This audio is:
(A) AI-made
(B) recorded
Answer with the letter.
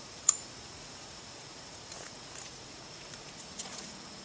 A